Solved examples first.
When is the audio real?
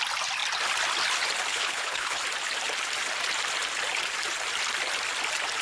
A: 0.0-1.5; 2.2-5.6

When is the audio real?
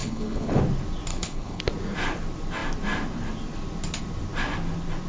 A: 0.6-1.1; 1.6-5.1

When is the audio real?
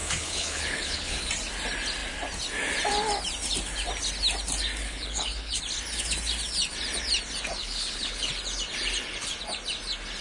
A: 1.3-4.8; 5.6-7.6; 8.3-10.2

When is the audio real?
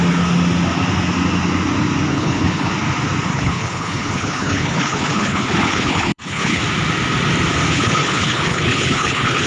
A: 0.0-2.1; 2.7-3.3; 6.6-7.7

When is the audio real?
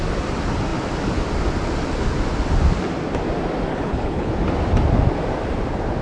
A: 0.0-3.7; 4.3-6.0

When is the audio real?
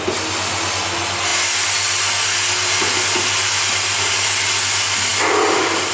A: 0.0-5.9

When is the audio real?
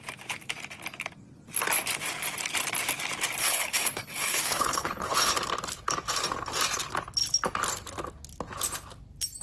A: 0.0-3.4; 5.3-9.4